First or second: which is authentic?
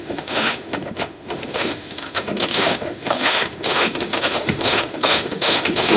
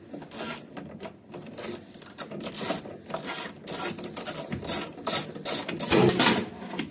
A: second